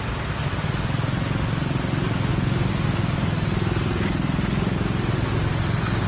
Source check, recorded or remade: recorded